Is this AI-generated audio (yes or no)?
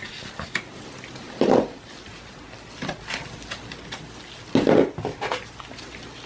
no